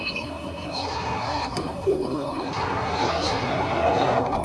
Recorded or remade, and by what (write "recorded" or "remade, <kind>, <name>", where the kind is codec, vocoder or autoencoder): remade, codec, SNAC